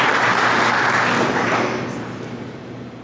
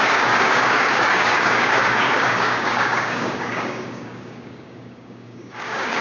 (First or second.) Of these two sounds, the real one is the first